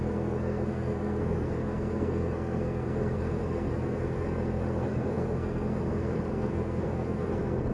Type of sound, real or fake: fake